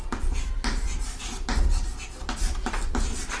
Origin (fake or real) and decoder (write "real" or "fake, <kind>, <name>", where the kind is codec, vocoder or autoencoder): real